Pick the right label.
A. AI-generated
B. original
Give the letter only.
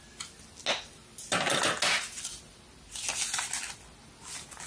B